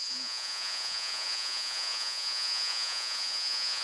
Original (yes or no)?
no